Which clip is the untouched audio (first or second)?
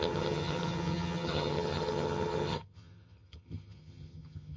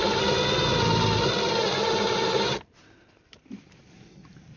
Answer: second